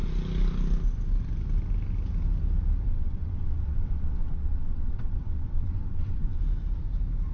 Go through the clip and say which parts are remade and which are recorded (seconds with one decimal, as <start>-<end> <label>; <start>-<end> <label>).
0.0-2.9 recorded; 2.9-6.4 remade; 6.4-7.3 recorded